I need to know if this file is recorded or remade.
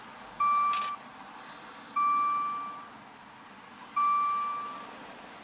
recorded